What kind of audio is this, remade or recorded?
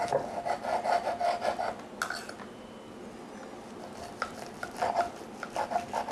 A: recorded